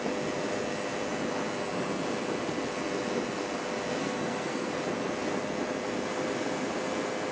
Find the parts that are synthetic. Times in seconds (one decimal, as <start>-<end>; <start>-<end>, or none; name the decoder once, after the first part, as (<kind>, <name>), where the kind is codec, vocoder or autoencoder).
4.0-4.7 (codec, SNAC)